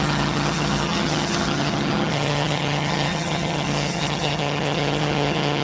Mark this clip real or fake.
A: fake